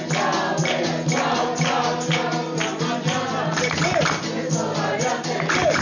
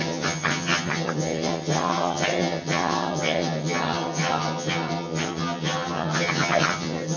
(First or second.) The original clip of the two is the first